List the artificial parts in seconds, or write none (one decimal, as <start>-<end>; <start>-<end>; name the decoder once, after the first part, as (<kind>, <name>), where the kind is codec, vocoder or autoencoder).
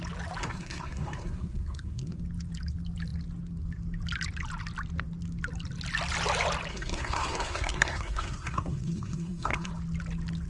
0.4-2.2 (codec, SNAC); 6.7-9.7